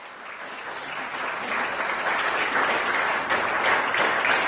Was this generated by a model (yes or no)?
no